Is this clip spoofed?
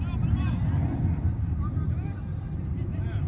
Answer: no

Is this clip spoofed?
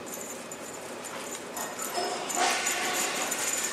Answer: yes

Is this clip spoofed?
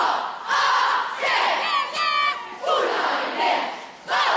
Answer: no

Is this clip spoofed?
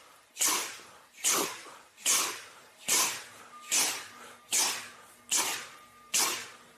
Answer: no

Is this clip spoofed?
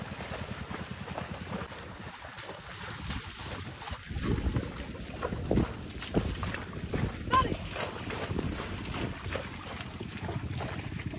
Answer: no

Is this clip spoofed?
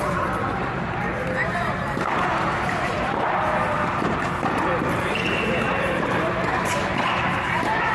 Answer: yes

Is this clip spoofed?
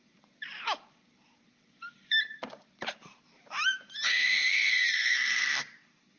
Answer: yes